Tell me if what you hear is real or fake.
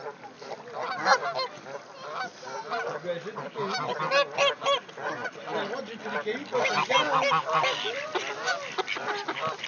real